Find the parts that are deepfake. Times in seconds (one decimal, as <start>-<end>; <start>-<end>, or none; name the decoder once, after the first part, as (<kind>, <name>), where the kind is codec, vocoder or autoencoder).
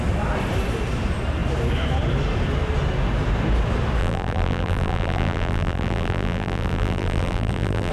4.0-7.9 (vocoder, BigVGAN v2)